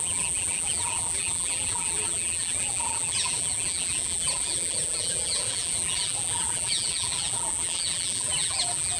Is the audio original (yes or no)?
no